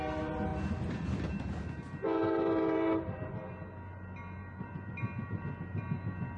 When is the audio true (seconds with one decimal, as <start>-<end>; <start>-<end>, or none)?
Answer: 0.0-2.2; 3.3-4.4; 4.9-6.4